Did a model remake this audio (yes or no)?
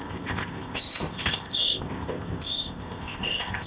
yes